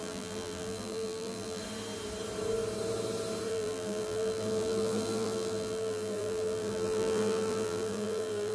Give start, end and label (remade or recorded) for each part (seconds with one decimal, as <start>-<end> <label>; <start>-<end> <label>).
0.0-1.6 remade; 1.6-3.5 recorded; 3.5-8.5 remade